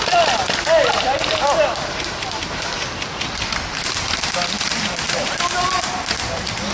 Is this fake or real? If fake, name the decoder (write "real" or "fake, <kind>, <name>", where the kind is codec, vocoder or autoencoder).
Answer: real